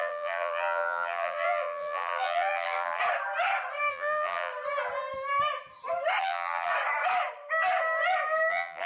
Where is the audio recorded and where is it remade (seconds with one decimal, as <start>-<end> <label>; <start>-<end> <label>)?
0.0-3.0 remade; 3.0-3.9 recorded; 3.9-4.5 remade; 4.5-6.2 recorded; 6.2-6.7 remade; 6.7-8.5 recorded; 8.5-8.9 remade